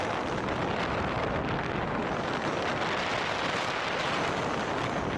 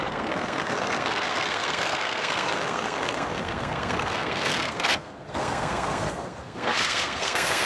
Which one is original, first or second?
first